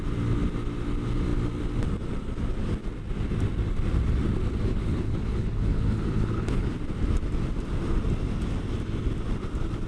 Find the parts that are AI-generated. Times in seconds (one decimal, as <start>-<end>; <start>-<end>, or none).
4.7-6.7